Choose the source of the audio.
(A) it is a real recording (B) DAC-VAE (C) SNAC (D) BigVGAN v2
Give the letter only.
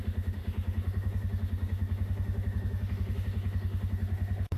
B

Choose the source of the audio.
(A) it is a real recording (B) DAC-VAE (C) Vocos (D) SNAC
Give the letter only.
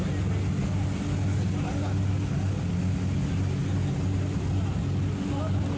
A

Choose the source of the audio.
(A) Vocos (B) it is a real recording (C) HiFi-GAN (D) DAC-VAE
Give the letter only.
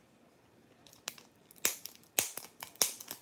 B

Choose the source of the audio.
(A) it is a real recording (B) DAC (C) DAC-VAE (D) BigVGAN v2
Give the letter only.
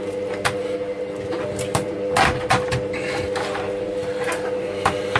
A